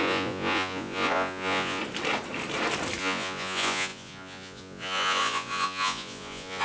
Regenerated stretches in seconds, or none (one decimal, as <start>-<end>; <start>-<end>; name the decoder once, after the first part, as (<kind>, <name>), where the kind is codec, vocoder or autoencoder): 0.0-1.8 (vocoder, Vocos); 3.0-6.6